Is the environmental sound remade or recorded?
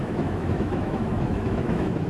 remade